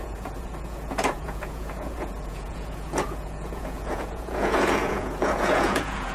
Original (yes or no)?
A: no